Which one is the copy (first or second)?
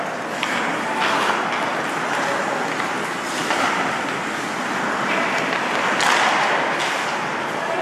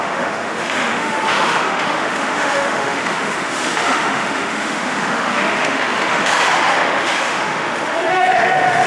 second